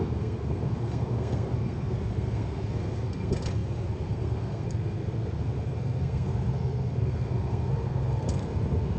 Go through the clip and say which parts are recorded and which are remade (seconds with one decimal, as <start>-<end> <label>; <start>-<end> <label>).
0.0-9.0 remade